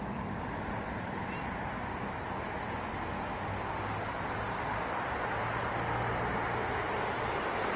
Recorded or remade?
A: recorded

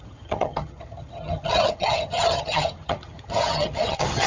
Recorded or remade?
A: remade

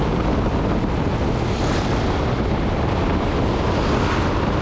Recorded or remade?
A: recorded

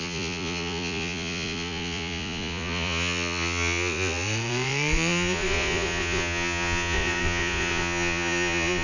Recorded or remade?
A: remade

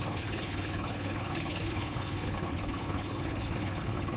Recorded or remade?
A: remade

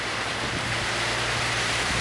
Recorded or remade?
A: remade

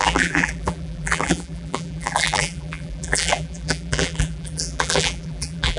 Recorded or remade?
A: remade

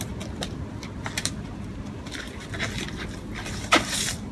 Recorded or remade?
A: remade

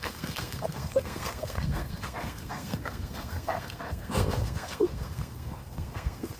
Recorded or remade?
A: remade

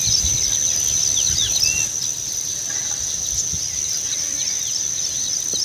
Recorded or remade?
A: recorded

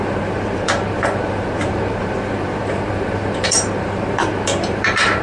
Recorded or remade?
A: remade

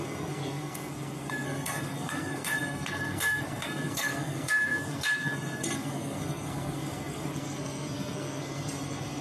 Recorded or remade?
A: remade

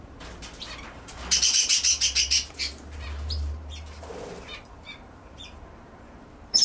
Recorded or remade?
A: remade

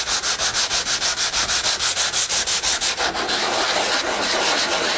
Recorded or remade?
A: recorded